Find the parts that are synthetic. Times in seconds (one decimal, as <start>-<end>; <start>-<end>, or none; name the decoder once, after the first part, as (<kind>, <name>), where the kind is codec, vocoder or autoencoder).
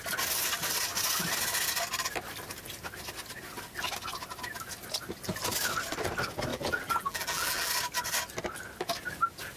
6.5-7.7 (vocoder, BigVGAN v2)